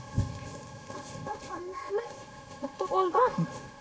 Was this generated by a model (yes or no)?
yes